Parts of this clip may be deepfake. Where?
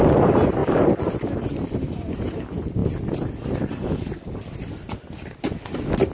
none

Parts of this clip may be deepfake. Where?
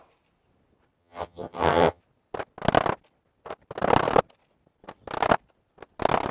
1.0-2.0 (vocoder, HiFi-GAN)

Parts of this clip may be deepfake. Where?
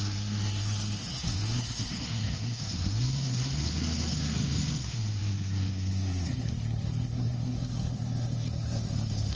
0.0-9.4 (codec, SNAC)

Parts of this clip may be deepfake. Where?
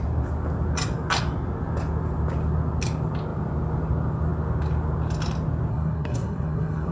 5.7-6.9 (codec, SNAC)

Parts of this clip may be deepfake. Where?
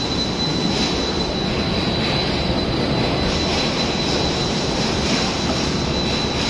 none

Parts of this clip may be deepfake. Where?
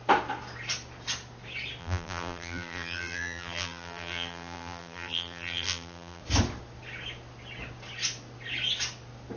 1.8-6.2 (vocoder, BigVGAN v2)